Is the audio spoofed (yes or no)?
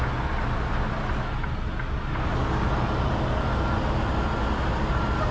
no